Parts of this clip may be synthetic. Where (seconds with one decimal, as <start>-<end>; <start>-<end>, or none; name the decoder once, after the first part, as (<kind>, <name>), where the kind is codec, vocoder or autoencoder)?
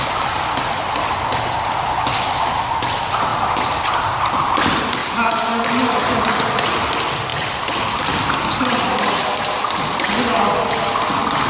3.3-4.2 (vocoder, BigVGAN v2)